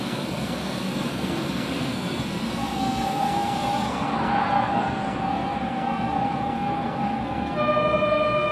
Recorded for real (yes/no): no